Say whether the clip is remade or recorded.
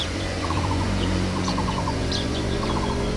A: remade